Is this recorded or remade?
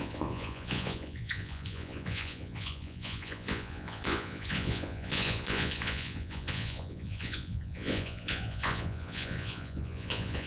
remade